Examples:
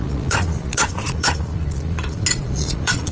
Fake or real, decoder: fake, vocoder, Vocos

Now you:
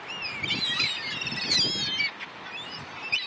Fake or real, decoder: real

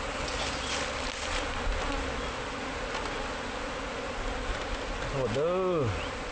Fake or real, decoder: real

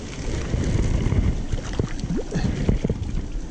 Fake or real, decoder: real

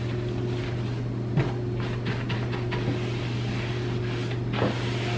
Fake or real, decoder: fake, vocoder, BigVGAN v2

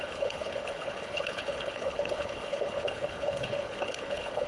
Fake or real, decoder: fake, codec, HILCodec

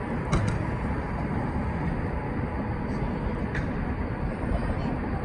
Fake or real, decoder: real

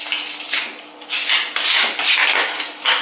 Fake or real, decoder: real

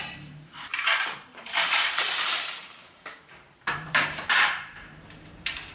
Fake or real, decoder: fake, vocoder, BigVGAN v2